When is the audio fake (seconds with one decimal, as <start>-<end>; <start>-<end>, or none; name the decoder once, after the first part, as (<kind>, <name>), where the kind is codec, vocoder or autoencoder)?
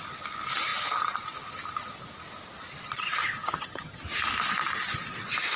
3.4-4.0 (vocoder, HiFi-GAN)